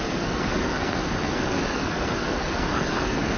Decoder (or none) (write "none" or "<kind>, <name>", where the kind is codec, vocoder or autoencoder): codec, SNAC